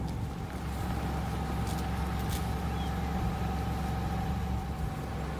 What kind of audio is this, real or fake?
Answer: real